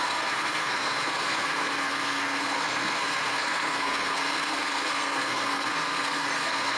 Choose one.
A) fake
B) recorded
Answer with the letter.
A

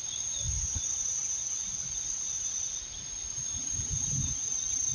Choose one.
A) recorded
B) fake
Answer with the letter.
A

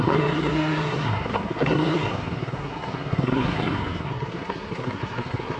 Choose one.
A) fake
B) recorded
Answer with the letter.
A